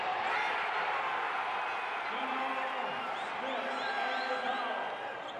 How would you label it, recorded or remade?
recorded